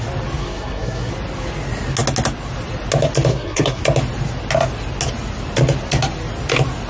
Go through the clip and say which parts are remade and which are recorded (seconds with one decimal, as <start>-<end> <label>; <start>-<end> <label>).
0.0-0.4 recorded; 0.4-1.1 remade; 1.1-3.3 recorded; 3.3-3.8 remade; 3.8-6.9 recorded